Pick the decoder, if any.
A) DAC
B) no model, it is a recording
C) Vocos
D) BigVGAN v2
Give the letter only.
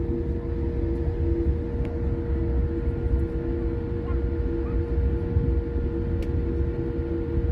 B